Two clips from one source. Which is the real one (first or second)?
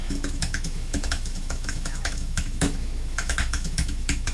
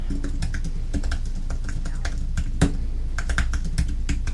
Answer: second